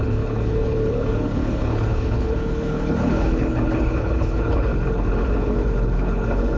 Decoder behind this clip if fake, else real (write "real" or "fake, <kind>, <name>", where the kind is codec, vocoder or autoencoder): fake, codec, HILCodec